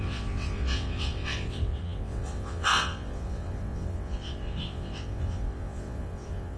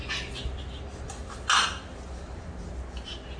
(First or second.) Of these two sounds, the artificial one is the first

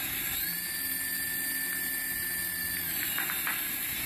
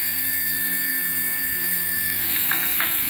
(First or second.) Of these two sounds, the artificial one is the second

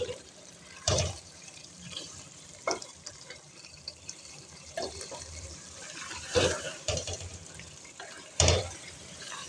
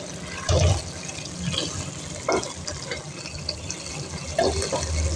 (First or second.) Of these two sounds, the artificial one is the first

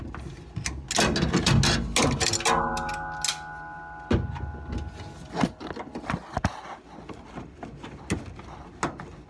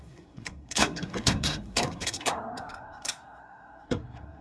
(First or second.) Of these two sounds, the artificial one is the second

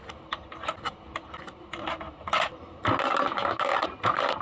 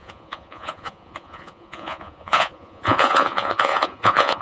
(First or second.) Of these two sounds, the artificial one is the second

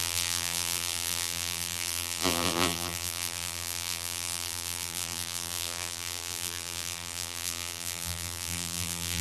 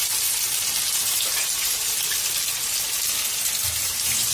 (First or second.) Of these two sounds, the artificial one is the first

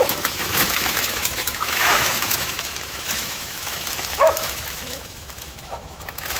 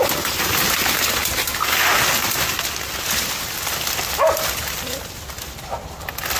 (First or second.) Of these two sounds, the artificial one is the first